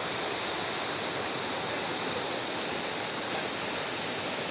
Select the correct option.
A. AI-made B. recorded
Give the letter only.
B